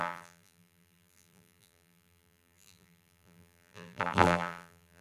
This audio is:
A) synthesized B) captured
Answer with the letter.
A